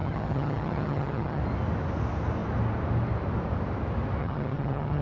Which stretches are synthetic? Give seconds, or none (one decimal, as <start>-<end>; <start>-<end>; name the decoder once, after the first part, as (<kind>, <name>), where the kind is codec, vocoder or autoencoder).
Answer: 0.0-1.4 (vocoder, HiFi-GAN); 4.2-5.0